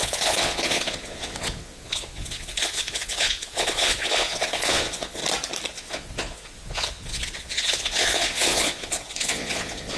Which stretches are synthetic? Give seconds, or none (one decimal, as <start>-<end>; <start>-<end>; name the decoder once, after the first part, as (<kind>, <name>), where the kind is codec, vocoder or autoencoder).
0.0-5.2 (vocoder, Vocos); 5.7-10.0